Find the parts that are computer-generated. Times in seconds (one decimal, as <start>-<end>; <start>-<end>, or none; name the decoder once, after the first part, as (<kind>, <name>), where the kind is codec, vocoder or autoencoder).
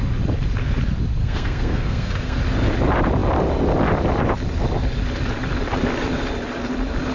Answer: 1.2-2.4 (codec, SNAC)